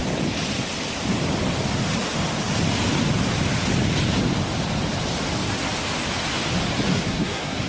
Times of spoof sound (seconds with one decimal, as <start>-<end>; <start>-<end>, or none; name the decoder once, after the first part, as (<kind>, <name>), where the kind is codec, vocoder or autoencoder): 6.9-7.7 (codec, SNAC)